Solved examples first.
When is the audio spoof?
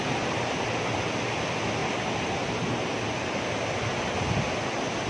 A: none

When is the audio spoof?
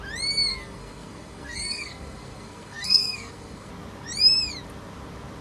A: 0.5-3.7 (codec, SNAC)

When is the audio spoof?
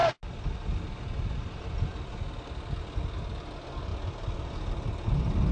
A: none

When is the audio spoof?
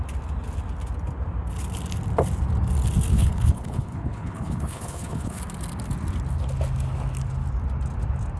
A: 3.1-5.4 (codec, HILCodec)